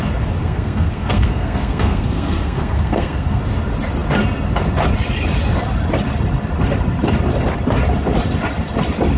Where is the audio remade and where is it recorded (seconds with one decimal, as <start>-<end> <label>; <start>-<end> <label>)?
0.0-0.4 recorded; 0.4-3.4 remade; 3.4-9.2 recorded